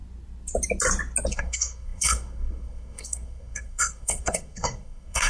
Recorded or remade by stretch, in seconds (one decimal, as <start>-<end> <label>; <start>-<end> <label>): 0.0-1.3 recorded; 1.3-5.3 remade